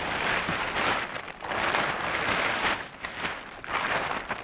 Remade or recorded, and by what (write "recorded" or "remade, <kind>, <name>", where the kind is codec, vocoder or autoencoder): recorded